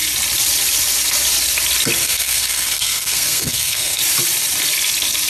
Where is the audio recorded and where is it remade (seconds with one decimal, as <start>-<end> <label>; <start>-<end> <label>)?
0.0-2.0 recorded; 2.0-4.0 remade; 4.0-5.3 recorded